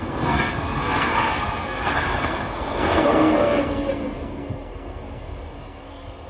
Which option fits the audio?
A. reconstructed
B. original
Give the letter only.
A